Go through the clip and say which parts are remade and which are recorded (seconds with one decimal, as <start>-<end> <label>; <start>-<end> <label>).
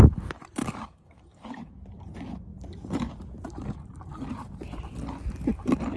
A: 0.0-0.6 recorded; 0.6-1.7 remade; 1.7-6.0 recorded